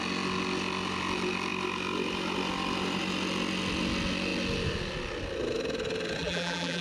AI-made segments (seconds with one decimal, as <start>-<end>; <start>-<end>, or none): 6.2-6.8